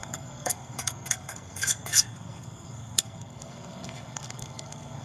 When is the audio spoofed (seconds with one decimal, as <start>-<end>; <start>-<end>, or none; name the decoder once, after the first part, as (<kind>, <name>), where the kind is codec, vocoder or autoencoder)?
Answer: 0.0-5.0 (codec, SNAC)